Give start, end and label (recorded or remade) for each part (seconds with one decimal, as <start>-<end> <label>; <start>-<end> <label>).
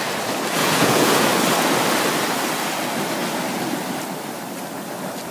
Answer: 0.0-0.6 recorded; 0.6-1.3 remade; 1.3-5.3 recorded